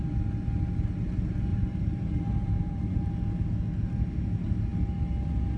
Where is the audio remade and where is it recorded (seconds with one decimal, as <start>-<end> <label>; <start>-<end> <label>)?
0.0-1.5 recorded; 1.5-3.1 remade; 3.1-5.6 recorded